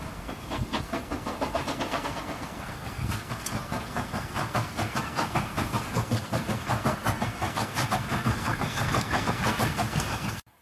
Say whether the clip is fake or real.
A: fake